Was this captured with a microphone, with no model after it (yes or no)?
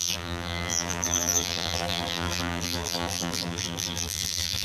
no